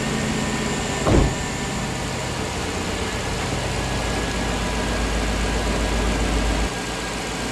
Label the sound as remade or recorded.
recorded